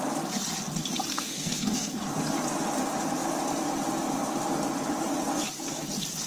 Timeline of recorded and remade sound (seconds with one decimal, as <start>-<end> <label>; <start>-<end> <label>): 0.0-1.1 recorded; 1.1-2.0 remade; 2.0-6.3 recorded